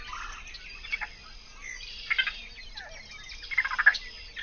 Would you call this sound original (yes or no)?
yes